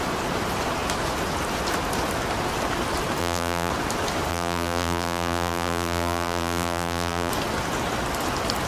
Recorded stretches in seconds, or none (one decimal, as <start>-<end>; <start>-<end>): 0.0-3.2; 3.7-4.3; 7.3-8.7